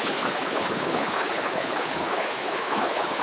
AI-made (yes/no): yes